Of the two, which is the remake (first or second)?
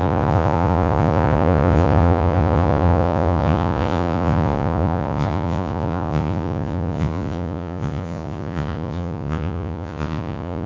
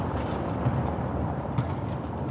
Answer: first